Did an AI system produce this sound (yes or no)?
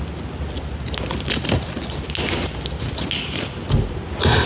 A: no